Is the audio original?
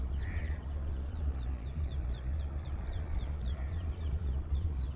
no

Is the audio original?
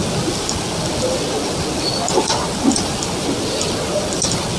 yes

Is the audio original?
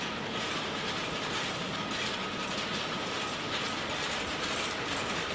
yes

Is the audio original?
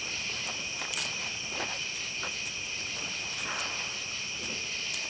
yes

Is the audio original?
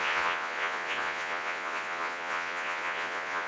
no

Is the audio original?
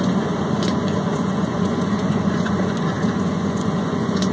no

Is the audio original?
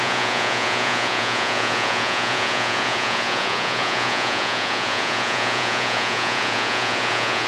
no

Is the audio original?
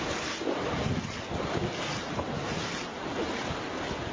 yes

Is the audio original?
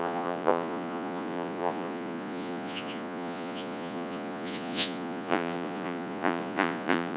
no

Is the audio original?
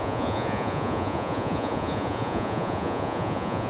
no